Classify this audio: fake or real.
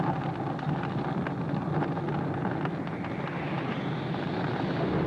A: real